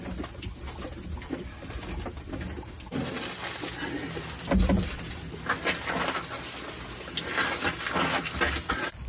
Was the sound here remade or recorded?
recorded